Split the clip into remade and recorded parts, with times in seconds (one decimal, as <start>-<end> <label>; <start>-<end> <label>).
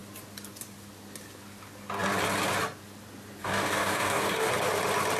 0.0-3.4 recorded; 3.4-4.5 remade; 4.5-5.2 recorded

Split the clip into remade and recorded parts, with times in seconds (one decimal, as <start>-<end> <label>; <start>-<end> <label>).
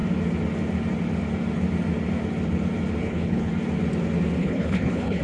0.0-3.0 recorded; 3.0-3.5 remade; 3.5-4.4 recorded; 4.4-5.2 remade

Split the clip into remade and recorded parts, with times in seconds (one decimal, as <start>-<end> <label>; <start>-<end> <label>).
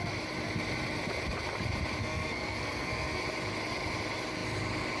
0.0-2.0 recorded; 2.0-3.2 remade; 3.2-5.0 recorded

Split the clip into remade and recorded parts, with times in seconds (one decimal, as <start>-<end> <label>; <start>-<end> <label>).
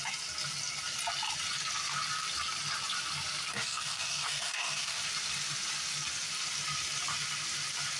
0.0-3.5 recorded; 3.5-5.0 remade; 5.0-8.0 recorded